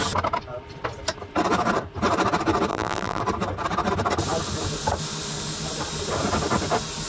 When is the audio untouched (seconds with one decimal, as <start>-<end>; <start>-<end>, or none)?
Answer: 0.0-2.7; 3.2-7.1